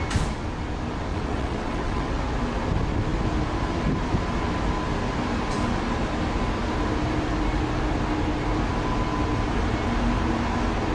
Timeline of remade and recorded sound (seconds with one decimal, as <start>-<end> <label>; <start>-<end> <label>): 0.0-1.1 recorded; 1.1-2.2 remade; 2.2-10.9 recorded